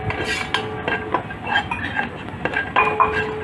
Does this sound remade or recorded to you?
recorded